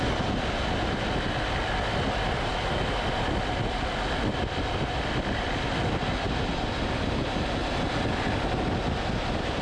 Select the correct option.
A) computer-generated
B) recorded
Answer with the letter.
B